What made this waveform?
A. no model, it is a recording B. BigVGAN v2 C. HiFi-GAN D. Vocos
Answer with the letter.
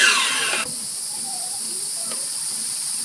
B